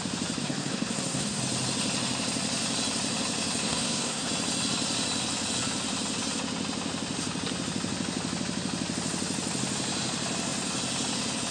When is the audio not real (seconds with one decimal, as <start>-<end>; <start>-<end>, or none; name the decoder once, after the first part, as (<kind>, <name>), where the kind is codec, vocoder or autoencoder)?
0.4-1.4 (codec, SNAC); 3.6-4.3